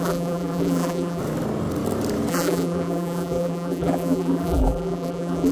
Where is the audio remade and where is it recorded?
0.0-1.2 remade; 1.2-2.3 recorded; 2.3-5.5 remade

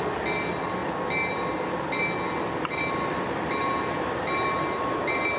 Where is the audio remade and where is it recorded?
0.0-5.4 recorded